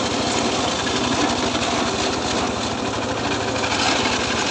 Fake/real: real